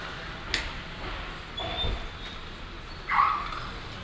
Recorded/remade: recorded